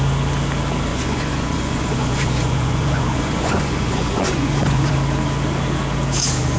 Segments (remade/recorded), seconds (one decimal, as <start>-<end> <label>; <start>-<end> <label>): 0.0-0.9 recorded; 0.9-4.9 remade; 4.9-6.6 recorded